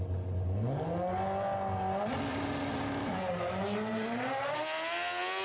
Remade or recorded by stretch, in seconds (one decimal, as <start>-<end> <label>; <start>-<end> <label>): 0.0-2.3 recorded; 2.3-3.5 remade; 3.5-3.9 recorded; 3.9-4.5 remade; 4.5-5.4 recorded